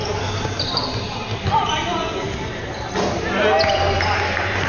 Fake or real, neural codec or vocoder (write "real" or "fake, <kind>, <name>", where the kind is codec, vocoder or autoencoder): real